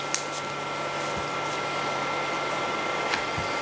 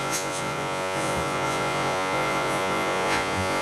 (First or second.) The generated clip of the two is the second